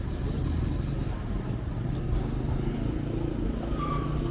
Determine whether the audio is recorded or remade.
recorded